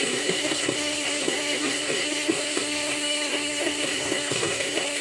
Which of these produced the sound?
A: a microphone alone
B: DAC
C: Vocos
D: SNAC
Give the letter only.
D